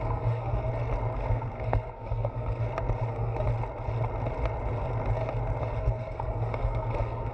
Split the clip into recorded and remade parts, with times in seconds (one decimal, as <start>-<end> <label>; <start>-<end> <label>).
0.0-0.7 remade; 0.7-1.3 recorded; 1.3-2.6 remade; 2.6-3.1 recorded; 3.1-3.5 remade; 3.5-5.8 recorded; 5.8-7.3 remade